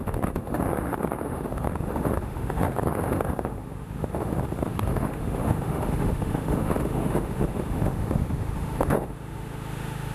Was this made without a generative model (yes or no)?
no